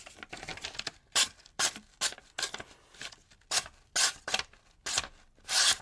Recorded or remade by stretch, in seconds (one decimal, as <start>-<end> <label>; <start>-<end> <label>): 0.0-5.8 recorded